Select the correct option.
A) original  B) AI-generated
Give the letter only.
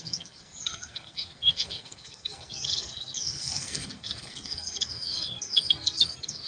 B